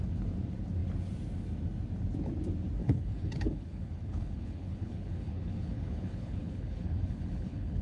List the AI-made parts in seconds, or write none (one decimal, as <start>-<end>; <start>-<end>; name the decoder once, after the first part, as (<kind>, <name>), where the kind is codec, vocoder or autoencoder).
2.8-7.8 (codec, HILCodec)